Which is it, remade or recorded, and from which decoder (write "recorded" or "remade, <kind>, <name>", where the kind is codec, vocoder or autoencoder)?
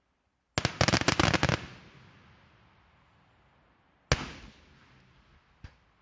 recorded